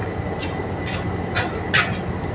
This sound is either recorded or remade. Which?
recorded